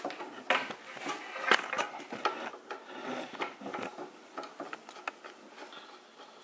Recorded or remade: recorded